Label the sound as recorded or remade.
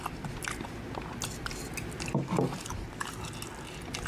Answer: recorded